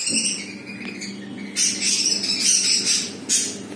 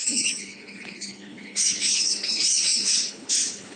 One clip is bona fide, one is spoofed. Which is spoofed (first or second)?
second